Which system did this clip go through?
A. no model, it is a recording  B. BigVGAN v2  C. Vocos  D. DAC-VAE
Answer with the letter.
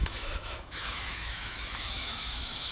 D